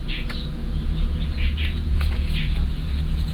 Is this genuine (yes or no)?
no